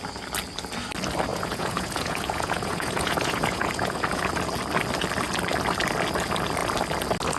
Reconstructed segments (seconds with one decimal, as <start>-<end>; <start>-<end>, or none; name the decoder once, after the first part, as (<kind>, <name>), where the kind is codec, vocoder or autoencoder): 1.3-4.3 (vocoder, Vocos)